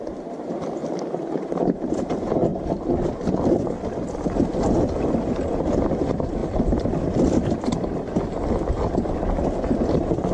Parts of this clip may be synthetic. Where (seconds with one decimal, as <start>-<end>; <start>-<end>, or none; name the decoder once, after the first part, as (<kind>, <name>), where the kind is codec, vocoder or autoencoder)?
0.8-2.1 (vocoder, BigVGAN v2); 2.5-3.3; 6.4-8.2